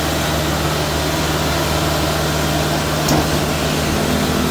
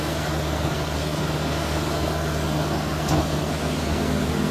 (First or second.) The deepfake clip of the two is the second